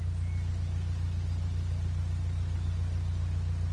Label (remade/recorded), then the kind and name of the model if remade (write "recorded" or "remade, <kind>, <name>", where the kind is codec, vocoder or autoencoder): recorded